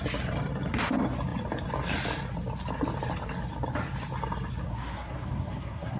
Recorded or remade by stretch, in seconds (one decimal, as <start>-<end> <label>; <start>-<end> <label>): 0.0-4.7 recorded; 4.7-6.0 remade